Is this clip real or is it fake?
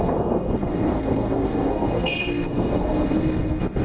fake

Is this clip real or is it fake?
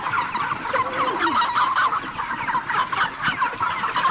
real